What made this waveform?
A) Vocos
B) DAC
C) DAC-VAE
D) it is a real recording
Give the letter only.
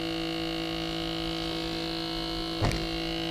D